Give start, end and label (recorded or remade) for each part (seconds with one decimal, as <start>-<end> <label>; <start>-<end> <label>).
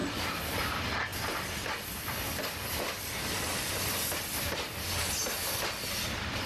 0.0-0.7 remade; 0.7-1.1 recorded; 1.1-3.4 remade; 3.4-6.5 recorded